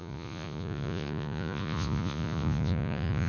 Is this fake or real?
fake